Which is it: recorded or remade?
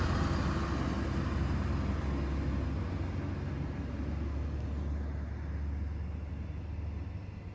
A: recorded